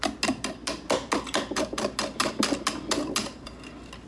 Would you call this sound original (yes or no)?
yes